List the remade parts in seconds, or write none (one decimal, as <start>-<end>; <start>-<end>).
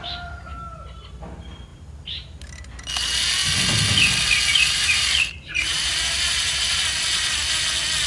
4.5-7.6